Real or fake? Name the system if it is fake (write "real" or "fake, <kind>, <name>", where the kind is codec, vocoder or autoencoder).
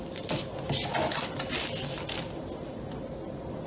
real